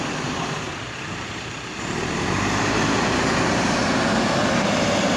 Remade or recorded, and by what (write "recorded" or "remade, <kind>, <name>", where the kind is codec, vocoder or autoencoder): remade, vocoder, BigVGAN v2